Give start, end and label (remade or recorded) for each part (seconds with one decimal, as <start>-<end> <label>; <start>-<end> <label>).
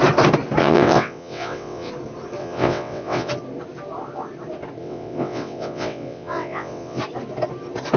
0.0-0.6 recorded; 0.6-1.9 remade; 1.9-2.4 recorded; 2.4-3.3 remade; 3.3-4.8 recorded; 4.8-7.0 remade; 7.0-8.0 recorded